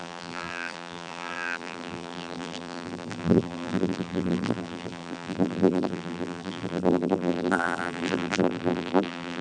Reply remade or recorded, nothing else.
remade